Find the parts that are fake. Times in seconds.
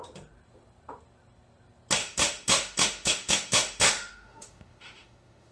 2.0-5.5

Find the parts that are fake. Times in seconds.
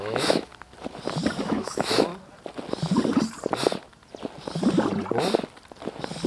0.0-0.5; 1.4-2.1